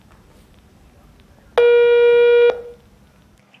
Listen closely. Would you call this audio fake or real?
real